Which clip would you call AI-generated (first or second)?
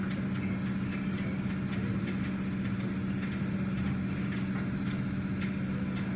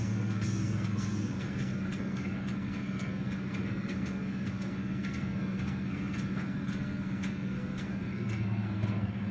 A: second